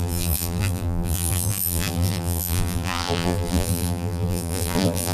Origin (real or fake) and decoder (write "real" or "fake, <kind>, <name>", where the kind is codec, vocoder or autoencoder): fake, vocoder, BigVGAN v2